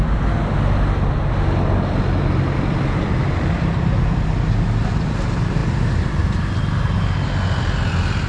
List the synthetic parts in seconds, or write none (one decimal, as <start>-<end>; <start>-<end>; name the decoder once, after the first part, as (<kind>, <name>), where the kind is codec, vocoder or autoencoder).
none